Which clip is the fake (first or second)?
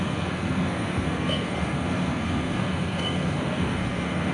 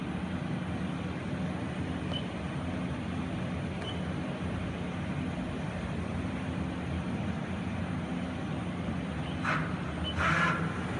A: first